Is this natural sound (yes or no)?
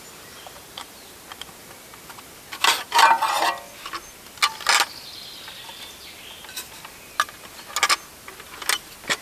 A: yes